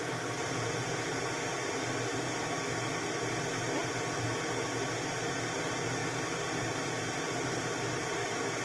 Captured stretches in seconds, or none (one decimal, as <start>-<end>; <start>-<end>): 0.0-8.6